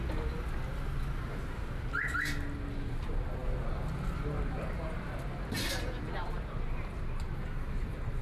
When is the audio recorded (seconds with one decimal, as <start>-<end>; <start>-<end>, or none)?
0.0-8.2